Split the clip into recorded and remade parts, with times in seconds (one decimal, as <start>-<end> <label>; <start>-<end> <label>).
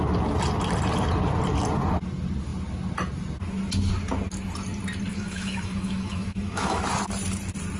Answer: 0.0-5.1 recorded; 5.1-6.8 remade; 6.8-7.8 recorded